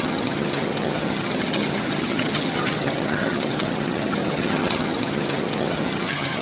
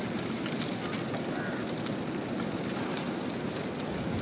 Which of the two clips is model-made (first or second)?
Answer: first